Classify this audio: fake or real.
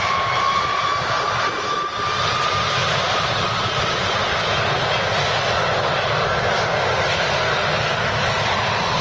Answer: real